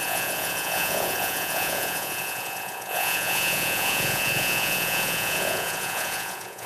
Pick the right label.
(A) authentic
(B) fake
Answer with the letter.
B